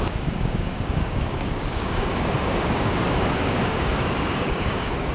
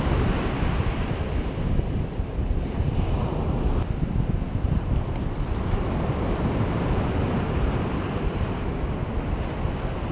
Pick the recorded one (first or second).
second